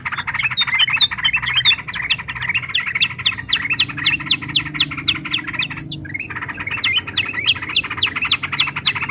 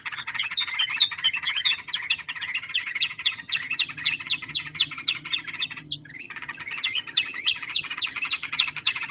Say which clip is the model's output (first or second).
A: second